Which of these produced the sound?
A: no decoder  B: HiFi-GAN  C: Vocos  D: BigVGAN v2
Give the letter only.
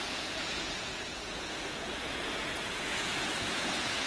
C